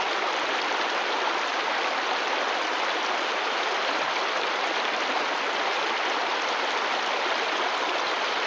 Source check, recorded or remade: recorded